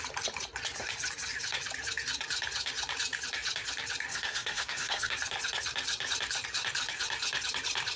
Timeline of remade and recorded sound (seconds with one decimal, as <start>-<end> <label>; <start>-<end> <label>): 0.0-4.1 recorded; 4.1-5.1 remade; 5.1-8.0 recorded